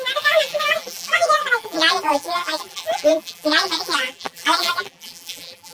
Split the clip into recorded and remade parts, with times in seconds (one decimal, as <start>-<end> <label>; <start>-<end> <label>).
0.0-5.7 remade